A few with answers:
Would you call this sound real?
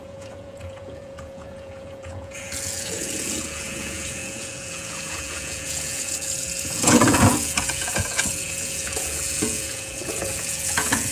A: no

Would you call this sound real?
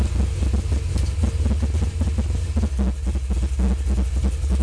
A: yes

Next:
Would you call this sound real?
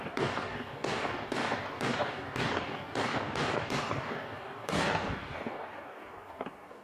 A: no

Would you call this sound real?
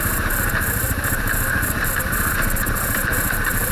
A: no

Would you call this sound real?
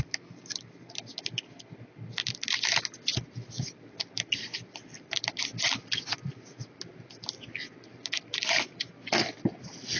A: yes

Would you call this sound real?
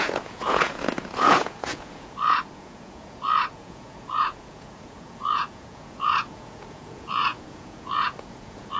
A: no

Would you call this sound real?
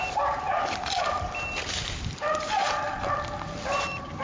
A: yes